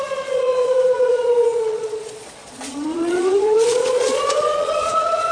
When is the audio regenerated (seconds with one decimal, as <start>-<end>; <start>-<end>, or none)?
0.0-5.3